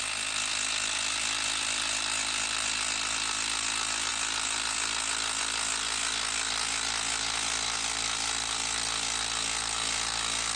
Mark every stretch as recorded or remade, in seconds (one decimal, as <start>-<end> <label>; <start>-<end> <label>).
0.0-10.6 recorded